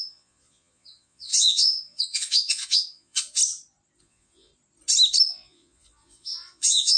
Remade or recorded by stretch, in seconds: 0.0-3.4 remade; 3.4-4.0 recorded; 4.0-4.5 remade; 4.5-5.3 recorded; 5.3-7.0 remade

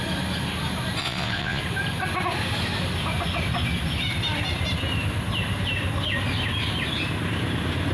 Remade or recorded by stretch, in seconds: 0.0-1.0 recorded; 1.0-1.6 remade; 1.6-7.9 recorded

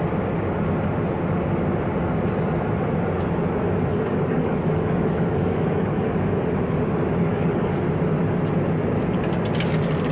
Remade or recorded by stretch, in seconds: 0.0-3.9 recorded; 3.9-6.5 remade; 6.5-7.3 recorded; 7.3-7.8 remade; 7.8-10.1 recorded

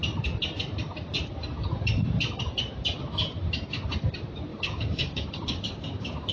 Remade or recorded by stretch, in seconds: 0.0-4.5 recorded; 4.5-6.3 remade